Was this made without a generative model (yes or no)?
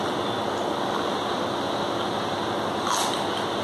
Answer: yes